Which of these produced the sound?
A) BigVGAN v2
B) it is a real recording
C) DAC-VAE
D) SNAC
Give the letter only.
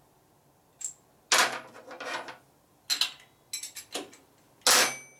B